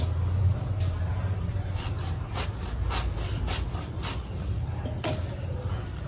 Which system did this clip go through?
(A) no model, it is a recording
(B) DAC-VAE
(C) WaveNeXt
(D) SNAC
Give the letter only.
A